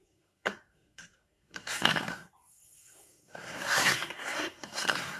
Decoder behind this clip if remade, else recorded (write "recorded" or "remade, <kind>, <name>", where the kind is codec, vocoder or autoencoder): remade, codec, SNAC